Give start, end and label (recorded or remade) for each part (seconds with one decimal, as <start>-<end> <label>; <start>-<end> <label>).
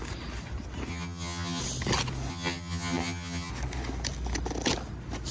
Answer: 0.0-0.9 recorded; 0.9-1.6 remade; 1.6-2.3 recorded; 2.3-3.5 remade; 3.5-5.3 recorded